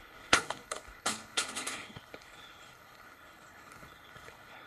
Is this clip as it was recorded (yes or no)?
no